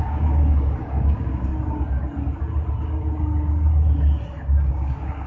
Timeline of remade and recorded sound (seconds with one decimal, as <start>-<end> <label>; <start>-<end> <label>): 0.0-1.5 remade; 1.5-4.7 recorded; 4.7-5.3 remade